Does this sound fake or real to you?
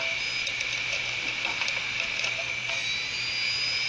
real